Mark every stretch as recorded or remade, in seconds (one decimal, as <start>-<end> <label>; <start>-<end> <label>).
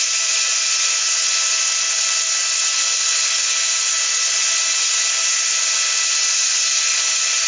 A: 0.0-7.5 recorded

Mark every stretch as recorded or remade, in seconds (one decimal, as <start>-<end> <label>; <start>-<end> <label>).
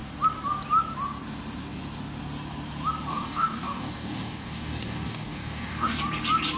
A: 0.0-3.1 recorded; 3.1-6.0 remade; 6.0-6.6 recorded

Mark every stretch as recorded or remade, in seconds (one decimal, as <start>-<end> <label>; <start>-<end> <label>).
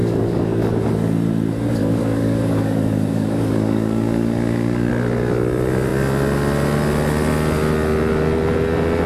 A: 0.0-0.9 remade; 0.9-1.8 recorded; 1.8-4.9 remade; 4.9-9.1 recorded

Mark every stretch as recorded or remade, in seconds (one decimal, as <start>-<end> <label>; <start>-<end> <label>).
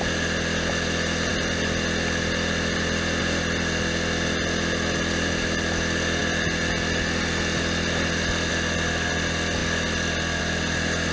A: 0.0-11.1 recorded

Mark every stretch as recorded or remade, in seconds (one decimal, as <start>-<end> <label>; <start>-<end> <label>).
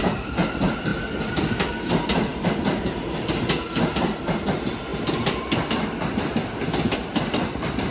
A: 0.0-7.9 recorded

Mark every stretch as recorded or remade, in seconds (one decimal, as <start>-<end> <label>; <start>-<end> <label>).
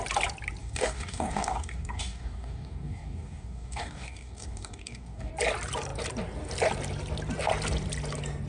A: 0.0-0.6 recorded; 0.6-5.3 remade; 5.3-8.5 recorded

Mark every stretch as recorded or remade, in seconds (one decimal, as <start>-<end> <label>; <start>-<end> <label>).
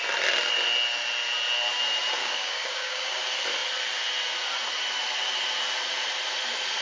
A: 0.0-2.2 recorded; 2.2-3.2 remade; 3.2-6.8 recorded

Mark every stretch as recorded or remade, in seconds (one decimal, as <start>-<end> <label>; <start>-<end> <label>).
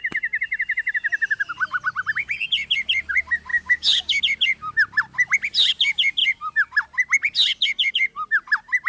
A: 0.0-3.5 recorded; 3.5-4.2 remade; 4.2-8.9 recorded